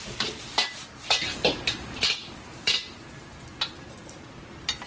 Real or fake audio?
real